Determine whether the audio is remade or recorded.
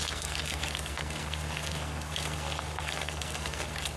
remade